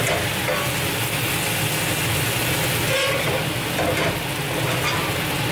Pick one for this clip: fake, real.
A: real